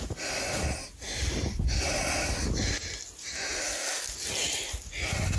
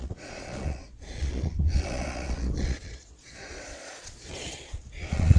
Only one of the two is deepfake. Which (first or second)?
second